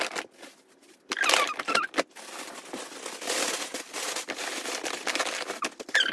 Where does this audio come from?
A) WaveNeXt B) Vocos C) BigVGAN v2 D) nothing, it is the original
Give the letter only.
D